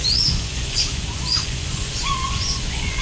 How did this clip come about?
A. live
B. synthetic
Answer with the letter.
B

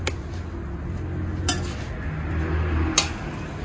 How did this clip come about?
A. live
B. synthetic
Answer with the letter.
A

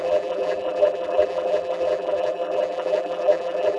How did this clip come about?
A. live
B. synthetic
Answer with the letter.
B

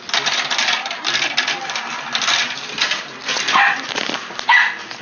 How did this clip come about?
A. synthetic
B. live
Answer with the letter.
B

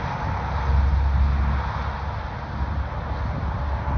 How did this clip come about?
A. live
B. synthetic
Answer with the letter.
A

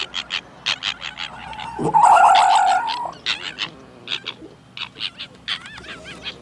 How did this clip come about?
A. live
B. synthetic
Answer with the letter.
A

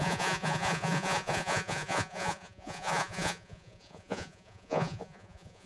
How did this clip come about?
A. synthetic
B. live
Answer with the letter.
A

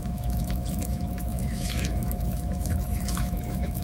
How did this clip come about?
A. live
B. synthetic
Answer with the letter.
B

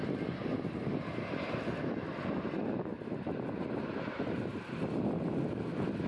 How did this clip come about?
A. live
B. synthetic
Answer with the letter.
A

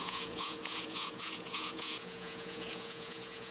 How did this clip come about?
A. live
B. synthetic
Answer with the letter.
B